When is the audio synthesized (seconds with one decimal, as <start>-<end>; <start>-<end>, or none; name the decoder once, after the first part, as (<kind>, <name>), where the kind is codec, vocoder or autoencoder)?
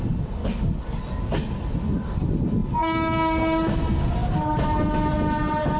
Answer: 0.4-1.0 (codec, DAC)